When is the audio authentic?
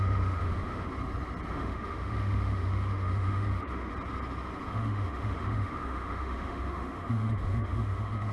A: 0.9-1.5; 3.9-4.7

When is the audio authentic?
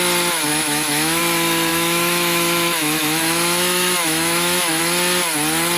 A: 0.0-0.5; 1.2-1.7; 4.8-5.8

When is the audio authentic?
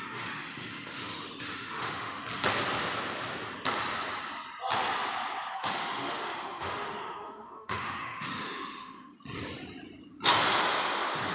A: 2.2-5.5; 9.1-11.3